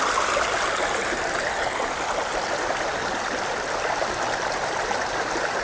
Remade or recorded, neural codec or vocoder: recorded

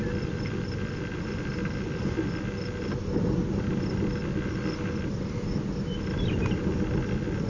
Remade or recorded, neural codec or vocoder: recorded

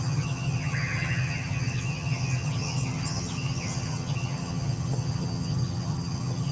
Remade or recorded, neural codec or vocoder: remade, vocoder, HiFi-GAN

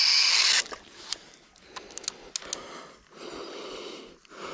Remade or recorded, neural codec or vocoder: recorded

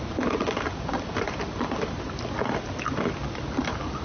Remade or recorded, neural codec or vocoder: recorded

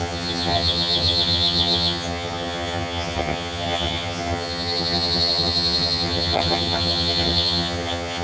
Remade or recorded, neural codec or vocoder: remade, vocoder, HiFi-GAN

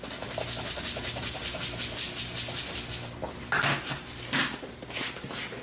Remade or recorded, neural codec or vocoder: recorded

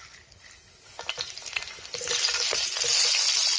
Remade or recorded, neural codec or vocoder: recorded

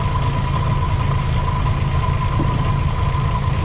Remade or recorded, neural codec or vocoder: recorded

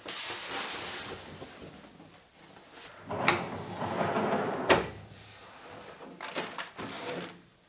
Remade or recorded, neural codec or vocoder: recorded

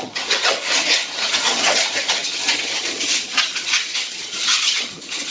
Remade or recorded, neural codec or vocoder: remade, vocoder, HiFi-GAN